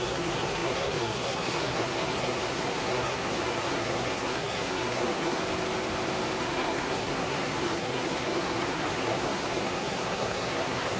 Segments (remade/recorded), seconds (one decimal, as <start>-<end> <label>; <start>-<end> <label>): 0.0-5.4 remade; 5.4-6.4 recorded; 6.4-11.0 remade